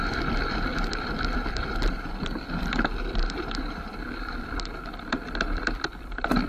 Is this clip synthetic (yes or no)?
yes